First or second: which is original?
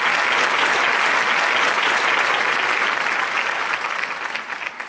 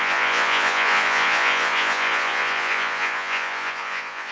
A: first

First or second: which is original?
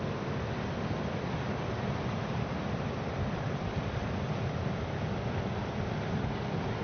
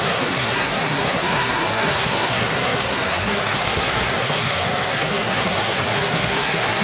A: first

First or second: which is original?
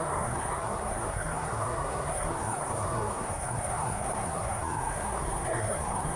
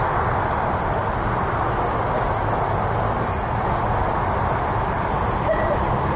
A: second